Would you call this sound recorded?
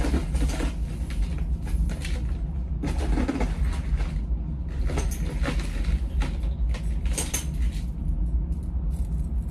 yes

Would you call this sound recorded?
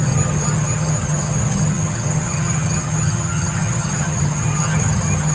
no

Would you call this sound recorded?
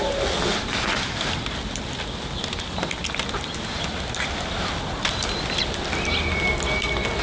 yes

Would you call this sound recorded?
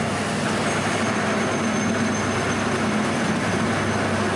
yes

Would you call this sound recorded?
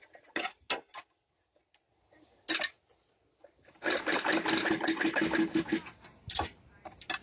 yes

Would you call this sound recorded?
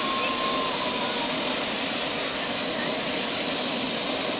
yes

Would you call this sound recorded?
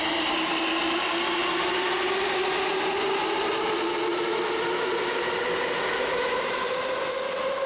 yes